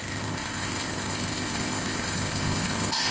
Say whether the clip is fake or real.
fake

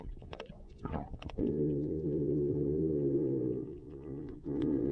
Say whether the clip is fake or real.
fake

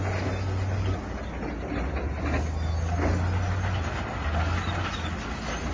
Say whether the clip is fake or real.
real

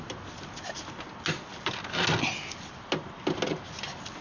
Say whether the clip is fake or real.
real